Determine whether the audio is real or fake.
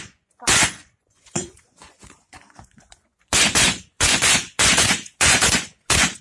fake